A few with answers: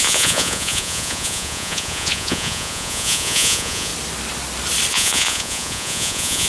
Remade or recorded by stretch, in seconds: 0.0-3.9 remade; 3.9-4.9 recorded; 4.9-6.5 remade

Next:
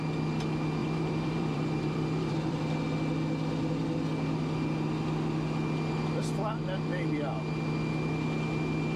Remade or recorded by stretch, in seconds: 0.0-0.8 recorded; 0.8-2.6 remade; 2.6-9.0 recorded

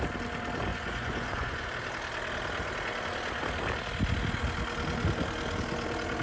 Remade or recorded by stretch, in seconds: 0.0-0.7 recorded; 0.7-1.7 remade; 1.7-6.2 recorded

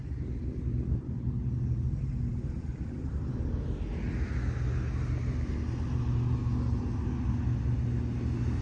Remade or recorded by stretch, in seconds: 0.0-8.6 recorded

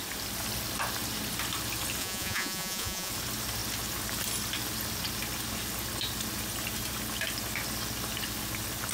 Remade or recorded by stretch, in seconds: 0.0-2.0 recorded; 2.0-3.1 remade; 3.1-8.9 recorded

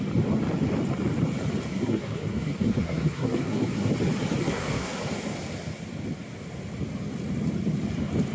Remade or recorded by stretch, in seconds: 0.0-1.7 recorded; 1.7-3.9 remade; 3.9-4.4 recorded; 4.4-5.0 remade; 5.0-8.3 recorded

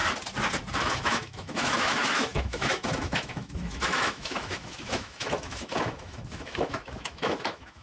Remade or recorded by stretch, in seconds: 0.0-0.7 recorded; 0.7-7.8 remade

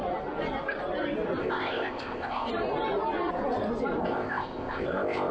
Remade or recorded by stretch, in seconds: 0.0-1.4 recorded; 1.4-2.5 remade; 2.5-4.0 recorded; 4.0-5.3 remade